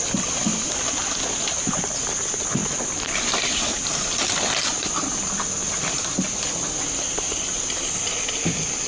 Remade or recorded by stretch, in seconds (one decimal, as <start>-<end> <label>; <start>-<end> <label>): 0.0-8.9 recorded